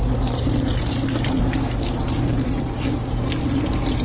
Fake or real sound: real